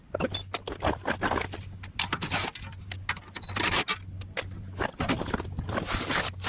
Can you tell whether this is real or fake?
real